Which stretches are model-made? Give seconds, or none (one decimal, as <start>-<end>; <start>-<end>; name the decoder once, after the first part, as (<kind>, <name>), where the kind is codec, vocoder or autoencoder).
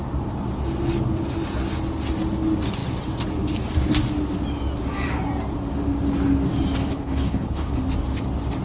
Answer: 6.8-7.8 (codec, HILCodec)